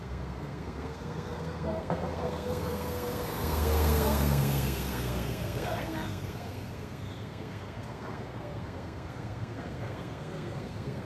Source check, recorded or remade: remade